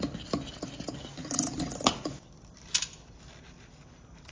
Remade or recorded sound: recorded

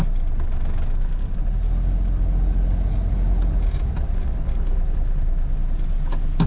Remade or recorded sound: recorded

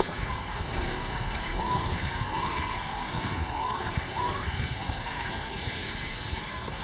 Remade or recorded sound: remade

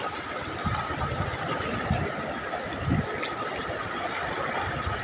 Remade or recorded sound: recorded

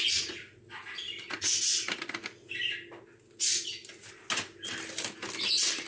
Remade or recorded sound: recorded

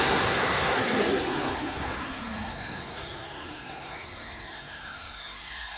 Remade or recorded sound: remade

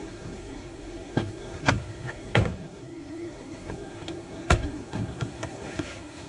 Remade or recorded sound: remade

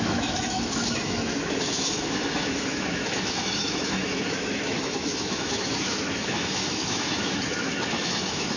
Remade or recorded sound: remade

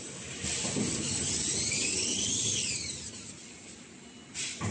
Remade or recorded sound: recorded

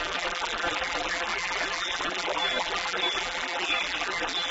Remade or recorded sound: remade